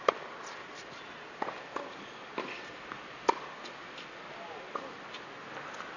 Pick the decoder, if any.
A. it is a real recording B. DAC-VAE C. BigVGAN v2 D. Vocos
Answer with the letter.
A